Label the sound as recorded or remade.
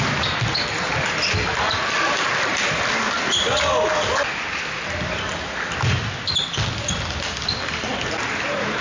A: recorded